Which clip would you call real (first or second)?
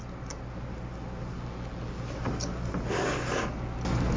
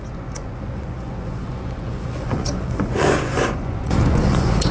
first